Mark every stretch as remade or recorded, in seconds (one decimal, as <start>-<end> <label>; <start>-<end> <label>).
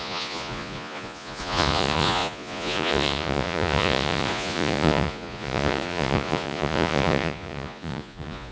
0.0-8.5 remade